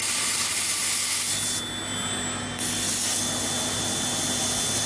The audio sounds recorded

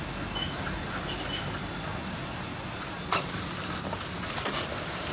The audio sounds recorded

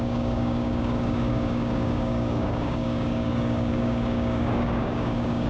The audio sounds remade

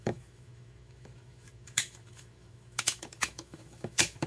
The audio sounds remade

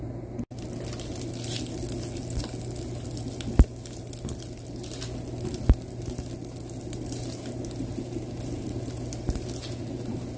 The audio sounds recorded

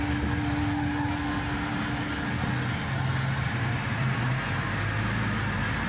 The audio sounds recorded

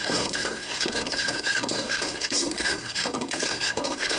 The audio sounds remade